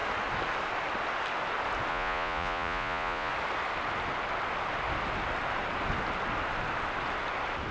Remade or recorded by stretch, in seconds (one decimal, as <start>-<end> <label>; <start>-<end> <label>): 0.0-1.9 recorded; 1.9-3.3 remade; 3.3-7.7 recorded